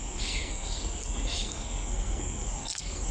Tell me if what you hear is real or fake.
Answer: fake